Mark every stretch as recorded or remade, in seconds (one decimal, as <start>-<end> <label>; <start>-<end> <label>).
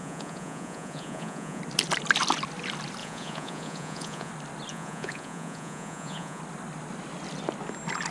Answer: 0.0-1.6 remade; 1.6-3.0 recorded; 3.0-4.3 remade; 4.3-4.7 recorded; 4.7-6.4 remade; 6.4-8.1 recorded